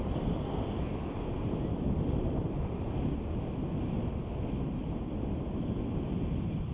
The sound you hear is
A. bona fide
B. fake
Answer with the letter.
A